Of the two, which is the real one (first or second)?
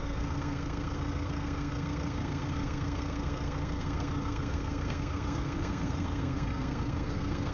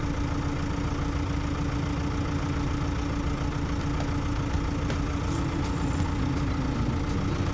second